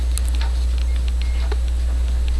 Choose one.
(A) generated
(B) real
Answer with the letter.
B